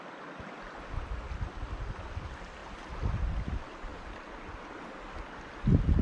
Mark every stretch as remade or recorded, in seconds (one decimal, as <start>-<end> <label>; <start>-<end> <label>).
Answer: 0.0-6.0 recorded